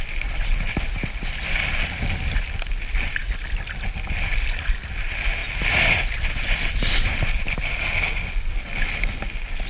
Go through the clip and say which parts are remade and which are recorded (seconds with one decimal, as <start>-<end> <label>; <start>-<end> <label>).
0.0-9.7 recorded